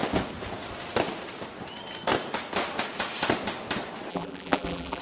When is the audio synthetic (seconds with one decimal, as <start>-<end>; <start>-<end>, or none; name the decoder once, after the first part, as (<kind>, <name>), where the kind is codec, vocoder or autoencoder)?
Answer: 4.1-5.0 (vocoder, BigVGAN v2)